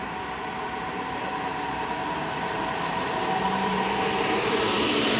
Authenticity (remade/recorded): remade